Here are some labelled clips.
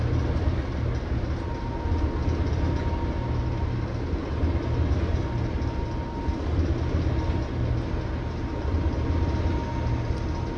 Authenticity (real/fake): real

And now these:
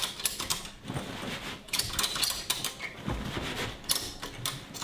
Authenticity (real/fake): real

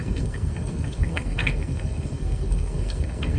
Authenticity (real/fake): fake